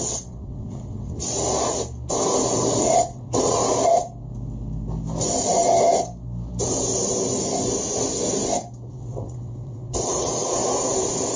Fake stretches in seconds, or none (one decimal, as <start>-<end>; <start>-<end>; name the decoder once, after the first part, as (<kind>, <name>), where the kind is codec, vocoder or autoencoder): 0.0-1.2 (vocoder, WaveNeXt); 2.8-3.6; 8.9-10.6